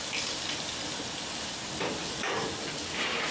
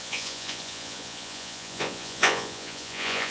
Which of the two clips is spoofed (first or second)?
second